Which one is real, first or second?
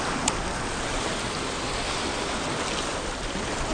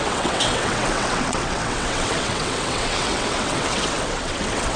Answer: first